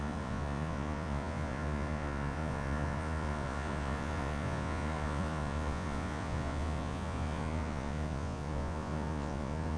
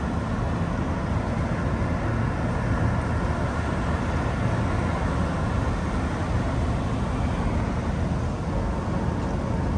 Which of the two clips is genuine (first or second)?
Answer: second